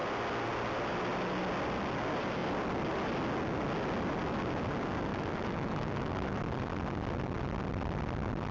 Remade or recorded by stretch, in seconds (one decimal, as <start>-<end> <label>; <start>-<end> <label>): 0.0-5.1 recorded; 5.1-6.4 remade; 6.4-8.5 recorded